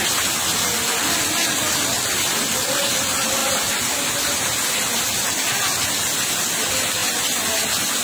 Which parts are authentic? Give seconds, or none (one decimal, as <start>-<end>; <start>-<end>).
0.0-8.0

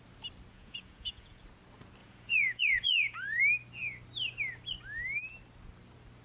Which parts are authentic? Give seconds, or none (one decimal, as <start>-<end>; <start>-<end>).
0.0-0.5; 1.4-2.0; 3.4-6.2

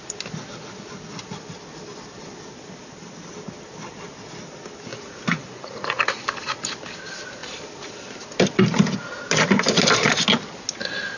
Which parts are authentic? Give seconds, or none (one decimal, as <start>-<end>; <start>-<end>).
0.0-4.9; 6.2-11.2

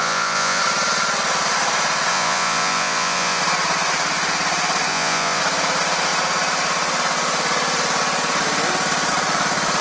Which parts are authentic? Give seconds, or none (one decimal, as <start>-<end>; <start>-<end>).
0.6-2.1; 3.4-4.9; 5.4-9.8

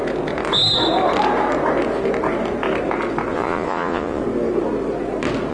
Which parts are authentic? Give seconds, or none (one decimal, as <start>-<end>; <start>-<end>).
0.0-3.3; 4.2-5.5

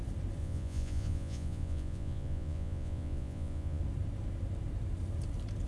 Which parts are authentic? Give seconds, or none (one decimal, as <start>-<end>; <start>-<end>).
0.0-0.4; 3.8-5.7